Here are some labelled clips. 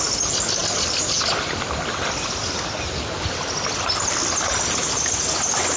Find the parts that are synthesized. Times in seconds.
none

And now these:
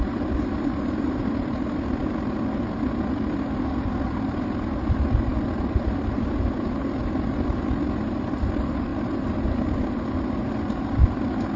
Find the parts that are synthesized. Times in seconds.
5.3-6.3 (vocoder, BigVGAN v2); 8.9-9.8

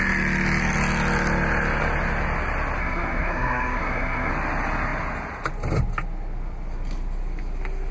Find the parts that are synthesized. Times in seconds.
2.8-4.3 (codec, SNAC)

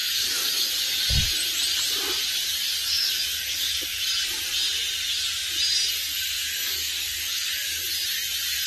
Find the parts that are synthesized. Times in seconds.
0.0-0.7 (codec, DAC); 2.4-4.0; 6.1-7.8

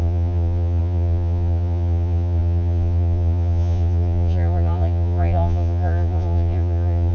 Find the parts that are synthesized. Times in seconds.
0.0-7.1 (vocoder, Vocos)

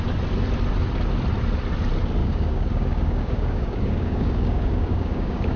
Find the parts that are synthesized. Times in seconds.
2.2-5.6 (codec, DAC)